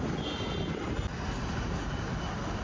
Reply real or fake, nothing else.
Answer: real